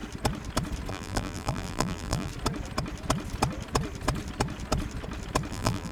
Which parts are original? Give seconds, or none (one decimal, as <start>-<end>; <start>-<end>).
0.0-0.9; 2.3-5.5